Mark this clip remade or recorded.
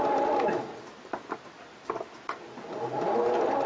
recorded